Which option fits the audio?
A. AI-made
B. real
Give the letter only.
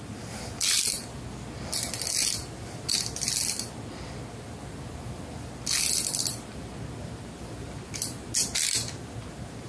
B